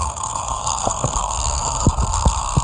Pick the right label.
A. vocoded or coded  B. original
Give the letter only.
A